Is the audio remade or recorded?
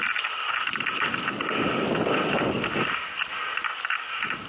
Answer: recorded